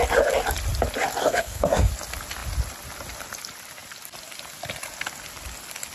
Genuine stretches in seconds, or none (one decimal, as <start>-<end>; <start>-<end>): 0.0-1.2; 1.9-5.9